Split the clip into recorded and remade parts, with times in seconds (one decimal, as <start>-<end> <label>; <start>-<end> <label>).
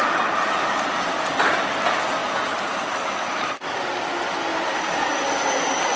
0.0-2.2 recorded; 2.2-4.1 remade; 4.1-4.5 recorded; 4.5-5.3 remade; 5.3-6.0 recorded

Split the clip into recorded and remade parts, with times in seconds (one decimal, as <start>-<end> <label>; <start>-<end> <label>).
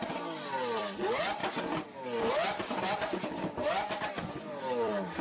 0.0-1.4 remade; 1.4-2.3 recorded; 2.3-5.2 remade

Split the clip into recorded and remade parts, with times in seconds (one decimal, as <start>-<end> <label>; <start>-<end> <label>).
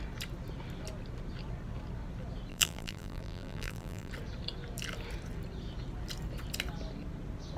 0.0-2.5 recorded; 2.5-4.1 remade; 4.1-7.6 recorded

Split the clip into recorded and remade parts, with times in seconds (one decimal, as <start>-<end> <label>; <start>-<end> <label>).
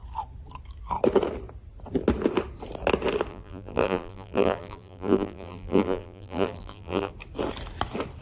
0.0-3.3 recorded; 3.3-7.1 remade; 7.1-8.2 recorded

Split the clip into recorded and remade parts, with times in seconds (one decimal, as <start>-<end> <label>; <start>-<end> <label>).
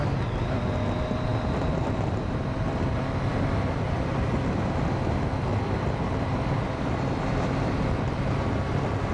0.0-1.3 recorded; 1.3-4.1 remade; 4.1-5.5 recorded; 5.5-7.8 remade; 7.8-9.1 recorded